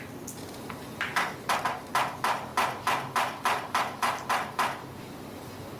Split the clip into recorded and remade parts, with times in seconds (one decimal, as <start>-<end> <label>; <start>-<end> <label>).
0.0-5.8 recorded